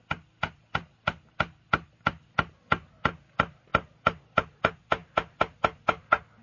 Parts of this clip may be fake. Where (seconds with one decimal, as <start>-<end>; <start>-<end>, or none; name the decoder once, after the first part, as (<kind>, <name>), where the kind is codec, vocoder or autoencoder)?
none